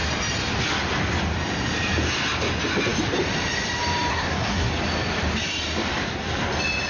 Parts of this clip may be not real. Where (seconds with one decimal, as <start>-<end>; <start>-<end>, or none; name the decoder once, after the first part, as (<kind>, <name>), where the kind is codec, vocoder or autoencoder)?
4.1-4.7 (codec, SNAC)